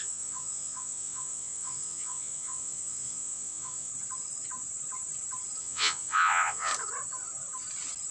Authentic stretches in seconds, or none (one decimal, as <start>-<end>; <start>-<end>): 3.9-5.6; 6.7-8.1